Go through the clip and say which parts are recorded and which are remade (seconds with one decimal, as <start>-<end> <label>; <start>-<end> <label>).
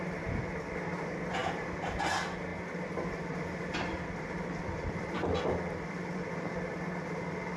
0.0-2.5 recorded; 2.5-6.3 remade; 6.3-7.6 recorded